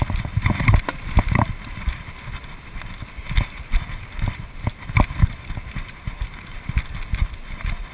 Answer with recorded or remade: recorded